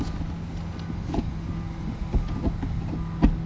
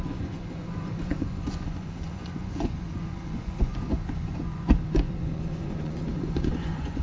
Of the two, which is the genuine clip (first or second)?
first